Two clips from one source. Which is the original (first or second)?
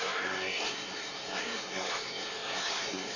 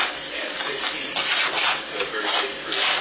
second